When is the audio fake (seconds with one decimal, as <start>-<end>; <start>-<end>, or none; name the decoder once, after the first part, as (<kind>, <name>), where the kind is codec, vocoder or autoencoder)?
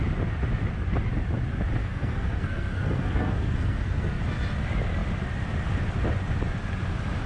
1.8-4.2 (codec, SNAC)